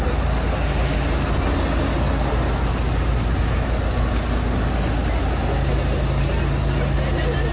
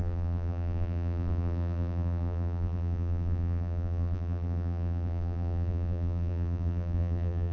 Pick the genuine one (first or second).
first